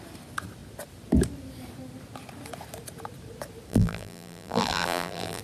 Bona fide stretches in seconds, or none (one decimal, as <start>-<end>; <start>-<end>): 0.0-3.7